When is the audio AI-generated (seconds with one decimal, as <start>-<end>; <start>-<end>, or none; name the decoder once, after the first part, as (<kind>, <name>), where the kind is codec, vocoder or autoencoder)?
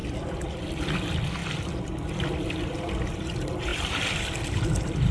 0.0-0.9 (vocoder, BigVGAN v2); 3.7-5.1